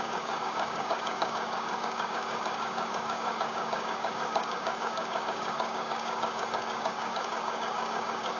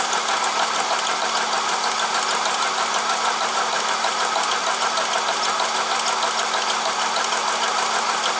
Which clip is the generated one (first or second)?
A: first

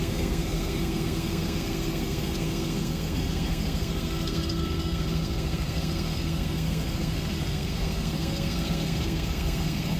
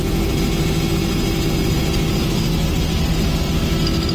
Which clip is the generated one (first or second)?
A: first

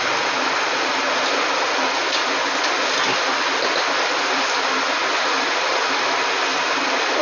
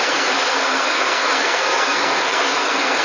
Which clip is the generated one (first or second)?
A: second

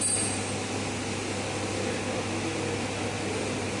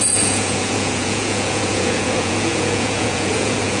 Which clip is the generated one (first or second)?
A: second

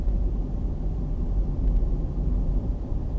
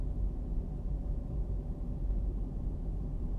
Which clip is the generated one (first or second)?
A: first